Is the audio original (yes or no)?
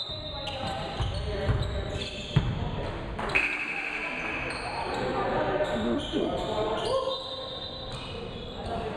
yes